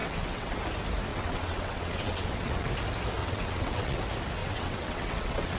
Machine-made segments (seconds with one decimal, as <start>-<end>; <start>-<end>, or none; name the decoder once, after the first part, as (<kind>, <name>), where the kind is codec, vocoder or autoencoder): 0.0-0.6 (vocoder, WaveNeXt); 1.1-2.7; 3.2-4.0; 4.4-5.6